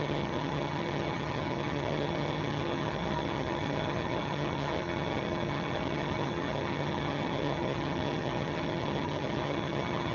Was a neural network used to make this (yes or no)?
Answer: yes